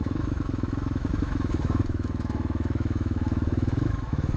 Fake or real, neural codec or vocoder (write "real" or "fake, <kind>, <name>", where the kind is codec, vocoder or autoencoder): fake, autoencoder, DAC-VAE